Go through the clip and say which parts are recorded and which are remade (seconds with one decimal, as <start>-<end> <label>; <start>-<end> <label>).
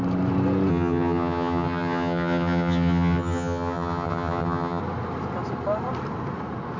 0.0-0.7 recorded; 0.7-4.8 remade; 4.8-6.8 recorded